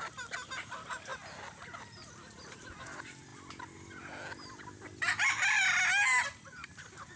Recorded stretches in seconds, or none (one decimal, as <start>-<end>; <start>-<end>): 0.0-7.2